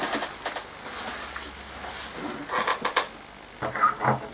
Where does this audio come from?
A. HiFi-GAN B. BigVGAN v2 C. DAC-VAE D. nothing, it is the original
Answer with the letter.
D